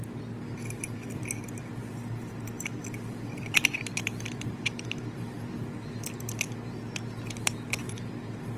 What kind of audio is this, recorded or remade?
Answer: recorded